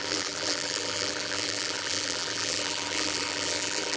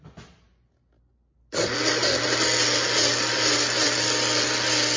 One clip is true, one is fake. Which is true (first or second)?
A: second